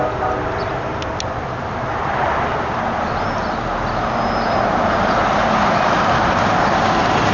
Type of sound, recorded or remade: recorded